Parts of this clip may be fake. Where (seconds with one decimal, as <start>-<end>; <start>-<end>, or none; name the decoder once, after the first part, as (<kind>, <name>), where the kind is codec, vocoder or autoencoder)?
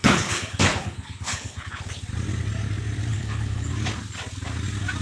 0.0-1.9 (codec, HILCodec); 3.1-3.7